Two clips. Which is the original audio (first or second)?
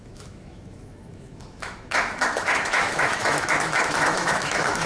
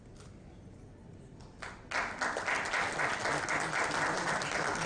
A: second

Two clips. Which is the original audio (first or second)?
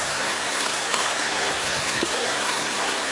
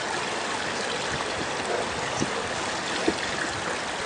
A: second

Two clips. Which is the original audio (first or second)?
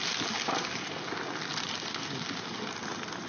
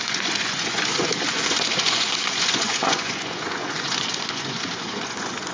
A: first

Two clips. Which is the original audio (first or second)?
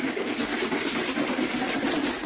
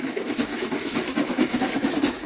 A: first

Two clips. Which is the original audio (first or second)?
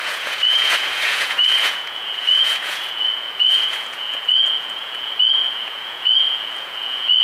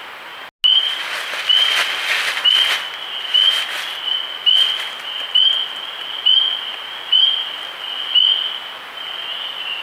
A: second